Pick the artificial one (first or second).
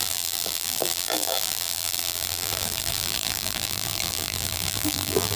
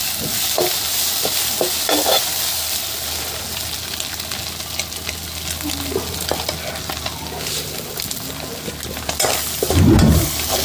first